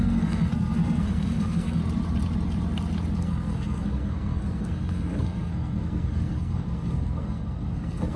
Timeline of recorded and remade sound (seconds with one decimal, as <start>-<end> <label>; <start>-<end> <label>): 0.0-1.8 remade; 1.8-3.2 recorded; 3.2-8.2 remade